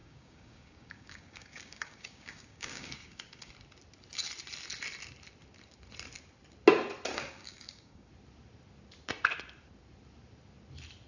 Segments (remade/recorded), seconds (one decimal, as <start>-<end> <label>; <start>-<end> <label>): 0.0-3.5 remade; 3.5-7.1 recorded; 7.1-8.1 remade; 8.1-11.1 recorded